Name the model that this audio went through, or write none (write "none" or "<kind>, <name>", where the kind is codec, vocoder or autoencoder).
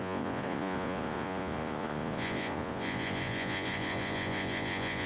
vocoder, Vocos